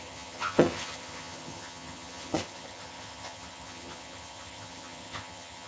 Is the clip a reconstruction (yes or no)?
yes